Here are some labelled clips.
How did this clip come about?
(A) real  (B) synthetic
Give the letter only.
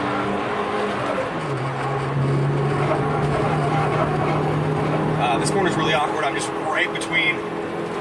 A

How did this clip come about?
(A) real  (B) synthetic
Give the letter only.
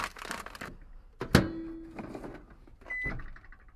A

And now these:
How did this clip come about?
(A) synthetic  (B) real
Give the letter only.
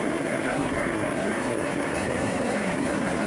A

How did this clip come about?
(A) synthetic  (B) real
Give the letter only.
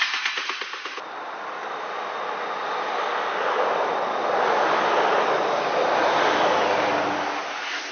B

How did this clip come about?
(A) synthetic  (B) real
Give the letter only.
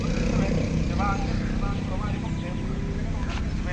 B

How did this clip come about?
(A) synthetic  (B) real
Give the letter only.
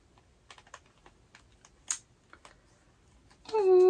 B